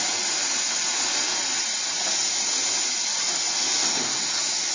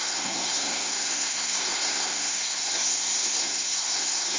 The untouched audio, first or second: first